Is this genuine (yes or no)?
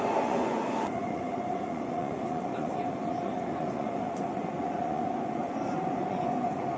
no